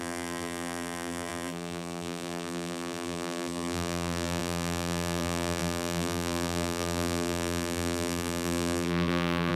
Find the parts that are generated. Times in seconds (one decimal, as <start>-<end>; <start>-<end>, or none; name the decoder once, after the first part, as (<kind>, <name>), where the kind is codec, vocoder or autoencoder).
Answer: 0.0-9.5 (vocoder, BigVGAN v2)